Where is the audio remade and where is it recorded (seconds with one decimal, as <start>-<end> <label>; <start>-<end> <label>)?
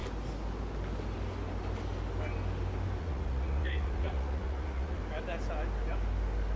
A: 0.0-3.0 recorded; 3.0-5.0 remade; 5.0-6.6 recorded